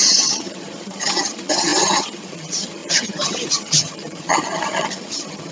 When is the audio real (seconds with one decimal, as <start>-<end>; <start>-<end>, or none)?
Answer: none